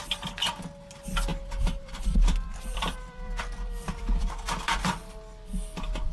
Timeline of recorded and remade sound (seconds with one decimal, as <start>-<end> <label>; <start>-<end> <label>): 0.0-1.3 recorded; 1.3-5.0 remade; 5.0-6.1 recorded

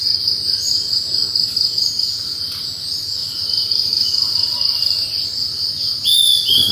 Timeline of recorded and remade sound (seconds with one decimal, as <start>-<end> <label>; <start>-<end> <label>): 0.0-1.1 remade; 1.1-3.2 recorded; 3.2-5.1 remade; 5.1-6.7 recorded

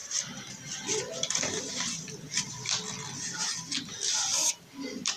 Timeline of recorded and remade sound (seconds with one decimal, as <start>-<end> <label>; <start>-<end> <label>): 0.0-5.2 recorded

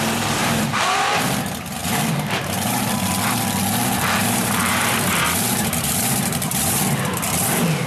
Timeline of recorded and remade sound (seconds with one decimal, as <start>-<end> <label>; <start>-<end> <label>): 0.0-0.4 recorded; 0.4-1.1 remade; 1.1-1.8 recorded; 1.8-3.1 remade; 3.1-4.2 recorded; 4.2-6.8 remade; 6.8-7.9 recorded

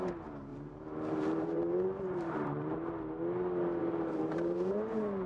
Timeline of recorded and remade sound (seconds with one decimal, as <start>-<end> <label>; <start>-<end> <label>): 0.0-0.5 recorded; 0.5-2.9 remade; 2.9-3.8 recorded; 3.8-4.7 remade; 4.7-5.3 recorded

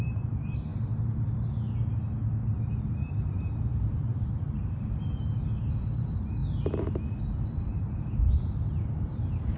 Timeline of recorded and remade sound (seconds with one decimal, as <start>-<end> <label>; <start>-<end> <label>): 0.0-0.7 remade; 0.7-2.8 recorded; 2.8-6.4 remade; 6.4-7.2 recorded; 7.2-9.6 remade

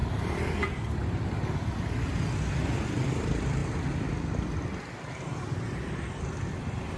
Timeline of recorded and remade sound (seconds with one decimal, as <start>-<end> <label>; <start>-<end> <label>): 0.0-2.5 recorded; 2.5-3.6 remade; 3.6-6.2 recorded; 6.2-7.0 remade

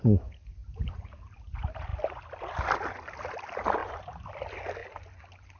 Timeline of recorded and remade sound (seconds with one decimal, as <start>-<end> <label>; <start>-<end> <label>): 0.0-3.8 recorded; 3.8-4.3 remade; 4.3-5.6 recorded